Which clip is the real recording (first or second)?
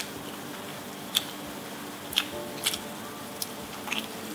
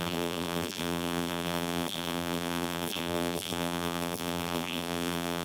first